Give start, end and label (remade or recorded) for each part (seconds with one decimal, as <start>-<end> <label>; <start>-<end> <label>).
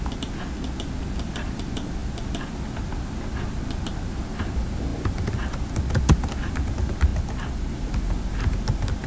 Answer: 0.0-9.1 recorded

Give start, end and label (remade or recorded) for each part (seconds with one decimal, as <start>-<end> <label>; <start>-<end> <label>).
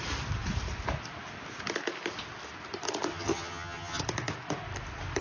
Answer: 0.0-3.1 recorded; 3.1-4.0 remade; 4.0-5.2 recorded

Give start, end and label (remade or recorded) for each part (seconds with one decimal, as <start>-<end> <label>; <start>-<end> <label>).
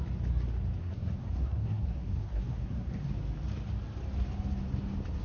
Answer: 0.0-0.8 recorded; 0.8-3.1 remade; 3.1-5.2 recorded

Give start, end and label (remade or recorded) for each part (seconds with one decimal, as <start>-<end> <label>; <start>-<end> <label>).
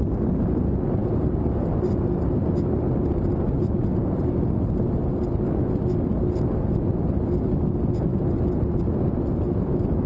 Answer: 0.0-10.1 recorded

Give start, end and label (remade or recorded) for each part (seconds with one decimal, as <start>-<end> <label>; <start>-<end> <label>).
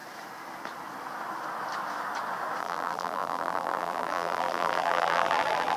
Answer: 0.0-2.6 recorded; 2.6-5.8 remade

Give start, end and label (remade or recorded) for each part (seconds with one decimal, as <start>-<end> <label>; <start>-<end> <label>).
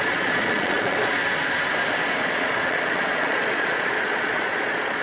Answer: 0.0-1.2 remade; 1.2-2.2 recorded; 2.2-5.0 remade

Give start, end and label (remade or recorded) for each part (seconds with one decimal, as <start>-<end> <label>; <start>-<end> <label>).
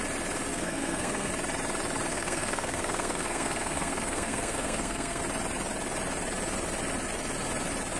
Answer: 0.0-0.5 recorded; 0.5-1.3 remade; 1.3-2.1 recorded; 2.1-5.2 remade; 5.2-8.0 recorded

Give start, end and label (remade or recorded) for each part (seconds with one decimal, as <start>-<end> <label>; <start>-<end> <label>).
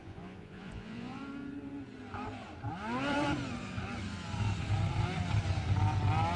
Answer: 0.0-1.2 remade; 1.2-6.4 recorded